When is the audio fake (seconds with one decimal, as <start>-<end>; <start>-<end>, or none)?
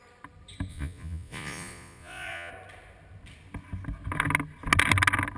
0.7-2.5